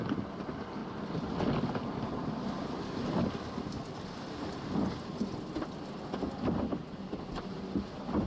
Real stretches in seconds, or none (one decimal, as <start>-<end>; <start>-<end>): 0.0-8.3